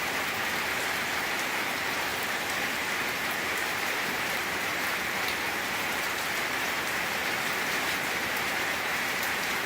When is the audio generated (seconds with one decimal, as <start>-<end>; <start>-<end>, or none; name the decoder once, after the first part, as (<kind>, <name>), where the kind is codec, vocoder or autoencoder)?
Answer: 0.0-9.7 (vocoder, BigVGAN v2)